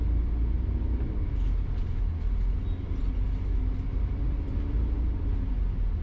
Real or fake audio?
real